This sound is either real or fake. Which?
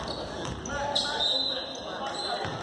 real